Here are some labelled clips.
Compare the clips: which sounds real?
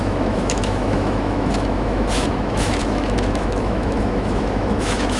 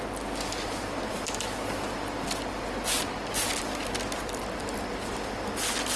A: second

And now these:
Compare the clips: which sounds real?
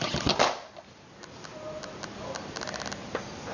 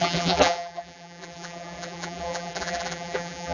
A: first